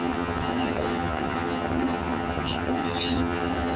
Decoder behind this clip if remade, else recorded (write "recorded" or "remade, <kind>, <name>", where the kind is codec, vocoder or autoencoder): remade, vocoder, HiFi-GAN